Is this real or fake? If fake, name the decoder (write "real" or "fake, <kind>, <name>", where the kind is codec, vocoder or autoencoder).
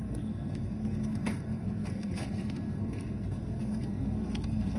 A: fake, codec, SNAC